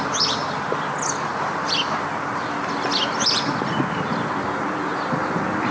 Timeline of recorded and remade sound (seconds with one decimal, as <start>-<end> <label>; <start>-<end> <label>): 0.0-1.3 recorded; 1.3-2.7 remade; 2.7-5.7 recorded